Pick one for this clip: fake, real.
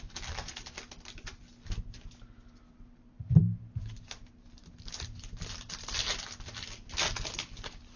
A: real